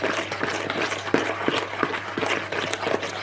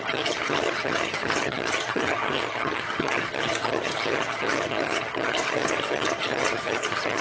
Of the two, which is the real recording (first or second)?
first